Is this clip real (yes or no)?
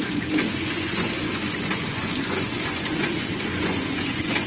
no